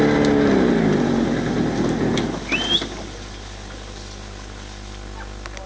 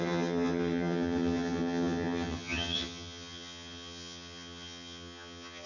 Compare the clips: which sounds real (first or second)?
first